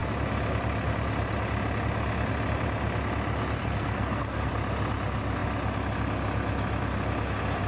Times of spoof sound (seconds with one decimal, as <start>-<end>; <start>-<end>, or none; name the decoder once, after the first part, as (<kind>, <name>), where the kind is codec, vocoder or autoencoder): 3.6-4.5 (codec, SNAC)